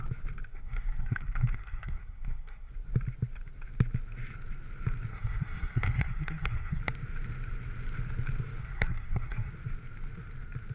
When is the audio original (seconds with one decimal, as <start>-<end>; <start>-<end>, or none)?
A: 0.0-0.5; 2.7-5.1; 6.8-8.6; 9.5-10.7